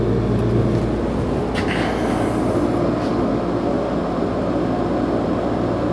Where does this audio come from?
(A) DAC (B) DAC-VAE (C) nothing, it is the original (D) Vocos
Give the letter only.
C